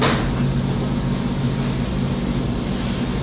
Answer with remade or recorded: recorded